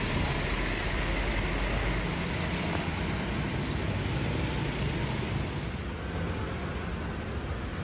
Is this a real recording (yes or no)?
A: yes